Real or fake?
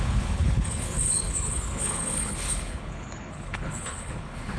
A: fake